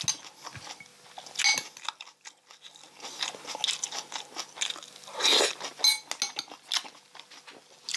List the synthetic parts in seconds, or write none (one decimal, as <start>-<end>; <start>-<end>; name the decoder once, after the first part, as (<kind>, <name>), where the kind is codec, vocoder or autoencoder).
none